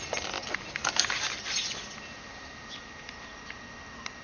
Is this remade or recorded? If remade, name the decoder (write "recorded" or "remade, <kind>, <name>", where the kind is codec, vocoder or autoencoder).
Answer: recorded